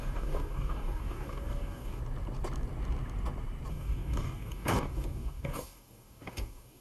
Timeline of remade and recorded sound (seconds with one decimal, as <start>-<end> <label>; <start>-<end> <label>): 0.0-2.0 remade; 2.0-3.7 recorded; 3.7-6.8 remade